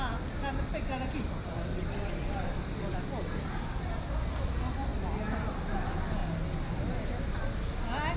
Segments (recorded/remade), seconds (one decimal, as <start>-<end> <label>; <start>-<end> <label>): 0.0-8.2 recorded